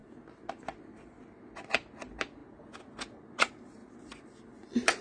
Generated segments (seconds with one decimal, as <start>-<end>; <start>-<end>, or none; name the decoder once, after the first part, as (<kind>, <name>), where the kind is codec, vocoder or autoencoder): none